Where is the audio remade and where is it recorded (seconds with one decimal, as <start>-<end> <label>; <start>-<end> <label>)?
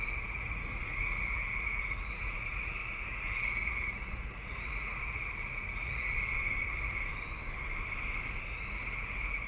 0.0-6.3 remade; 6.3-8.5 recorded; 8.5-9.5 remade